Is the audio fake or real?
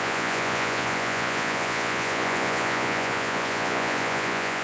fake